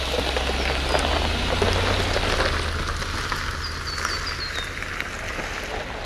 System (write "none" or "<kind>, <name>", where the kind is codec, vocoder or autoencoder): none